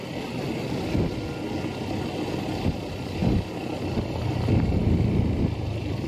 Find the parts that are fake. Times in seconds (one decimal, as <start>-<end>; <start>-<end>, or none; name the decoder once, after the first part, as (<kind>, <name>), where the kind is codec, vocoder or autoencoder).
none